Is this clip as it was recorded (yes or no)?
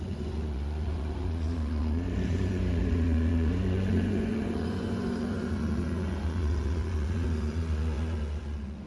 no